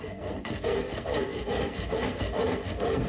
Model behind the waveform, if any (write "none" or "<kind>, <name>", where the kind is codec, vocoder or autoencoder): codec, SNAC